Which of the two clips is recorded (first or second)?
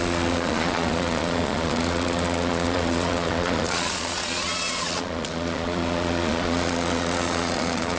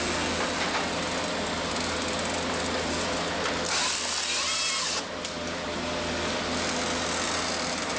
second